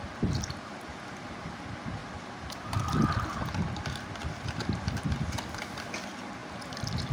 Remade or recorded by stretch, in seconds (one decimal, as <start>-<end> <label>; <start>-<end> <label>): 0.0-7.1 recorded